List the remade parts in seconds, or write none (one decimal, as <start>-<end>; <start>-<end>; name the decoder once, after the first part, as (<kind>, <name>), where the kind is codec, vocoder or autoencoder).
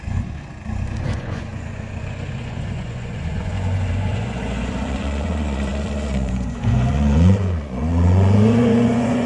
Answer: 0.0-9.3 (vocoder, Vocos)